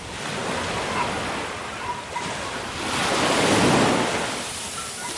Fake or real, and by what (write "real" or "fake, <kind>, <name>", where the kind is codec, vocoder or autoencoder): real